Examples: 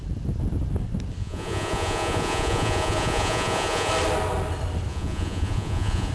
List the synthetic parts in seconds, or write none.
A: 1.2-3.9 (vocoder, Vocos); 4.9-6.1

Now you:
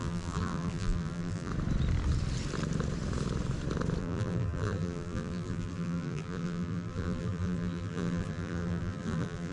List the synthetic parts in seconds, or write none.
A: 0.0-1.5 (vocoder, BigVGAN v2); 4.0-9.5

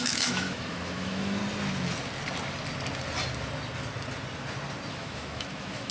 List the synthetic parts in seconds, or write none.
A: 0.0-1.4 (autoencoder, DAC-VAE); 4.9-5.9